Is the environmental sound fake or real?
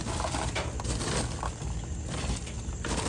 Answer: real